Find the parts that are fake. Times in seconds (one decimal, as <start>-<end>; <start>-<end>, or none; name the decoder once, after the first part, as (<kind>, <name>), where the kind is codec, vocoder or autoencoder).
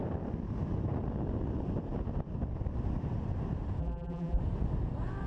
3.8-4.4 (vocoder, BigVGAN v2)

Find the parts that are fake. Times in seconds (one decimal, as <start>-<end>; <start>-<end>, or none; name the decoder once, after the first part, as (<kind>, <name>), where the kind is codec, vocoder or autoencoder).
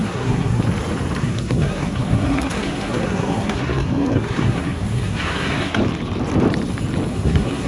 0.0-0.6 (codec, SNAC); 1.2-5.8; 7.1-7.7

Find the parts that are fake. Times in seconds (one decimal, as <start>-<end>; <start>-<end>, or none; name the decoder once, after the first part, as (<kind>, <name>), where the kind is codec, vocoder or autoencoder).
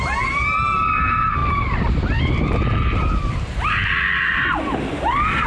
none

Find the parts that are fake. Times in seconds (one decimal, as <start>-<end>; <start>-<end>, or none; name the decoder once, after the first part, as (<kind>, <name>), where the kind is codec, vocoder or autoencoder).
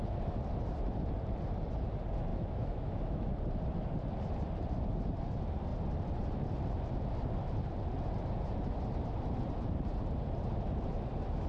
2.3-3.3 (autoencoder, DAC-VAE)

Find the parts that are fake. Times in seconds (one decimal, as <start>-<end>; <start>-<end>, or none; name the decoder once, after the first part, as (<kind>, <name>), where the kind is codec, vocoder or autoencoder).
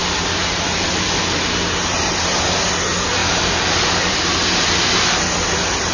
0.0-1.2 (vocoder, BigVGAN v2); 3.2-4.6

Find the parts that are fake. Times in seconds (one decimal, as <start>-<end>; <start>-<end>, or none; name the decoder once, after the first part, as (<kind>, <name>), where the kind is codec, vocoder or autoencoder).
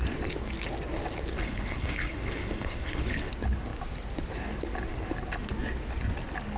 1.3-3.3 (codec, HILCodec)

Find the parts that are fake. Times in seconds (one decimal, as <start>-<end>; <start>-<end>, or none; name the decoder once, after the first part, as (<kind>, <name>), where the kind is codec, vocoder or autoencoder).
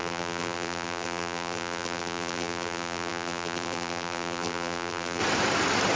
0.0-5.2 (vocoder, BigVGAN v2)